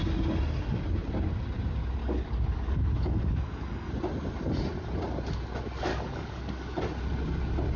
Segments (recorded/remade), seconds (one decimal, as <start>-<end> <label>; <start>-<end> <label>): 0.0-2.0 recorded; 2.0-3.9 remade; 3.9-5.9 recorded; 5.9-6.8 remade; 6.8-7.8 recorded